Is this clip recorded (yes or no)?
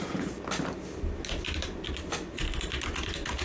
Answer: yes